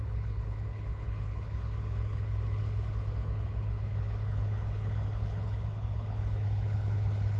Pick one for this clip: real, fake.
fake